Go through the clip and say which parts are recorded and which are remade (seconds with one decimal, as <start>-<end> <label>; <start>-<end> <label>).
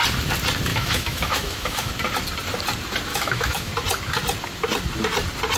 0.0-0.7 recorded; 0.7-1.9 remade; 1.9-3.1 recorded; 3.1-3.7 remade; 3.7-5.6 recorded